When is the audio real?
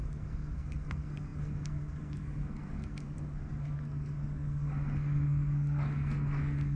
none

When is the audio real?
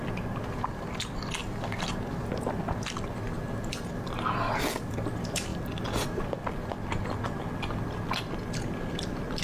1.4-4.6; 5.5-8.5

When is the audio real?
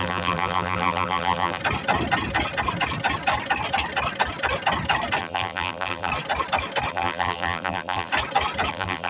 1.6-5.2; 6.1-6.9; 8.1-8.7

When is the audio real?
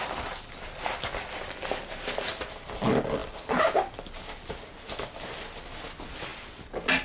0.0-7.0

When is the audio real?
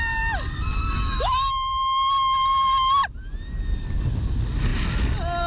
0.0-0.8; 2.1-5.5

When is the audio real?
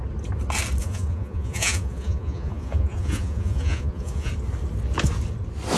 0.0-0.8; 4.3-5.8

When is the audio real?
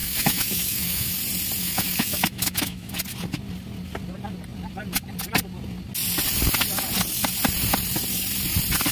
1.1-1.6; 2.9-8.9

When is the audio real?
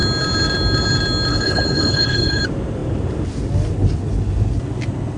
0.0-1.3; 2.4-5.2